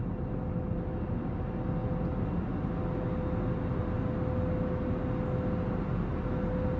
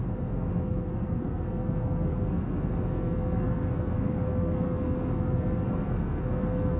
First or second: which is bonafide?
first